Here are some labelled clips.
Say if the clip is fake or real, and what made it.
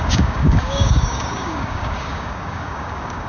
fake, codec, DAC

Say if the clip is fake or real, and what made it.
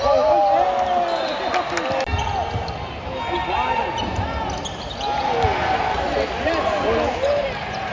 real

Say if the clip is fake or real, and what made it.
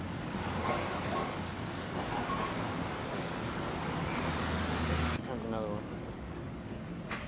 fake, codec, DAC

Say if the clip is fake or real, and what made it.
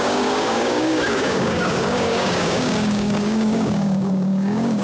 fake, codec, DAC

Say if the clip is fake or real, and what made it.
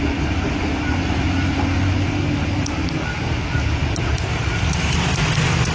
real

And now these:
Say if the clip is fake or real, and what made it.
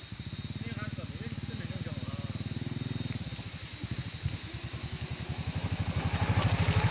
real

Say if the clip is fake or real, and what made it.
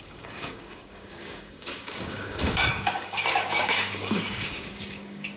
fake, codec, DAC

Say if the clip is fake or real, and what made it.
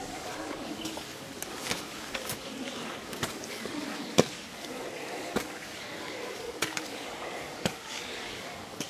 fake, codec, DAC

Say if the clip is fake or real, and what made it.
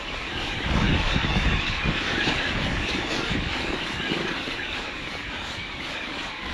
fake, codec, DAC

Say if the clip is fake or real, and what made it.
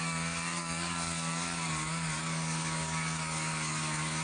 fake, codec, DAC